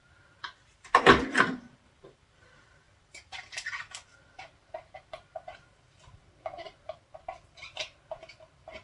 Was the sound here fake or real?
fake